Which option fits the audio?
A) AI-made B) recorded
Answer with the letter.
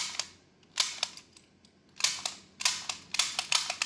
B